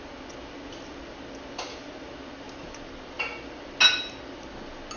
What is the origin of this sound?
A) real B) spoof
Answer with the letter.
A